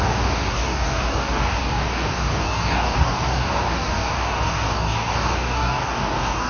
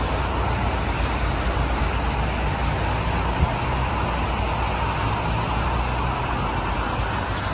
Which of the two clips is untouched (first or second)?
second